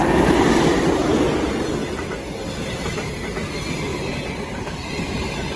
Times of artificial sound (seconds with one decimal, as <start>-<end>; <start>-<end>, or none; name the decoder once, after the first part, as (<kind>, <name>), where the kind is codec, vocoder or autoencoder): 3.9-4.9 (vocoder, BigVGAN v2)